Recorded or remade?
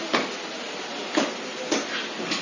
recorded